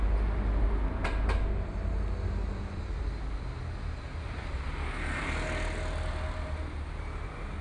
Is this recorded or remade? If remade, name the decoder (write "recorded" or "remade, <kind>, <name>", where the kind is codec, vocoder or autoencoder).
recorded